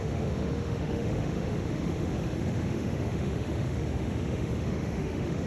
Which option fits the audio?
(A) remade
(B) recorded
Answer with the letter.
A